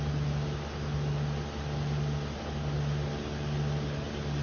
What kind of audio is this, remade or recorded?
recorded